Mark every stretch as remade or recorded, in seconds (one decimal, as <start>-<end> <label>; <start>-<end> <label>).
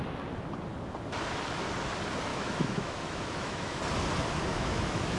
0.0-2.3 recorded; 2.3-3.8 remade; 3.8-4.5 recorded; 4.5-5.2 remade